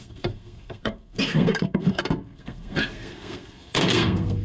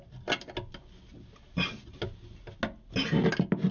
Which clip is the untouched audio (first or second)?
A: second